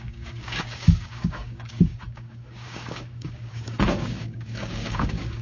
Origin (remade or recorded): remade